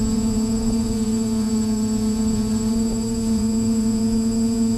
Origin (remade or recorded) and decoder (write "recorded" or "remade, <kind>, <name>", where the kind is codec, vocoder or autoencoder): remade, vocoder, Vocos